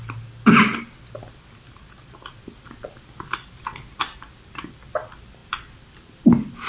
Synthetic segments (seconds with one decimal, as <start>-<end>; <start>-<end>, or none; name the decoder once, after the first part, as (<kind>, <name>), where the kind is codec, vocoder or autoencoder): none